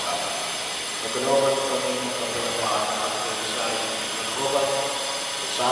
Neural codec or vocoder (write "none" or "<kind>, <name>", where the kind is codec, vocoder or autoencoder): none